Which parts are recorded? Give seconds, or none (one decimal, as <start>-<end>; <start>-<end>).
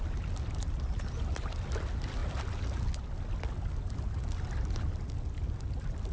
0.0-6.1